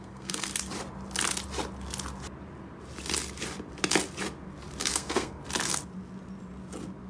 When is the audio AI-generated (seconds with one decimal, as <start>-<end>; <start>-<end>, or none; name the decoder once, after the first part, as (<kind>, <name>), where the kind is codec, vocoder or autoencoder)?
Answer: 0.0-0.5 (codec, SNAC); 4.8-5.4

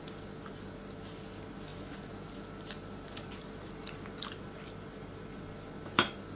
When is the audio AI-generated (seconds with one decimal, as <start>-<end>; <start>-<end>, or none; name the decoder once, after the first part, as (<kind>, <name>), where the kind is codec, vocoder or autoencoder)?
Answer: none

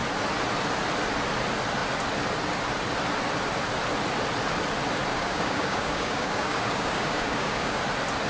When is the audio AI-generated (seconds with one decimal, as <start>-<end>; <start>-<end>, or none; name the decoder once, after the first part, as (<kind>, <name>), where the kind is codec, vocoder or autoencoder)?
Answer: 5.1-7.8 (codec, DAC)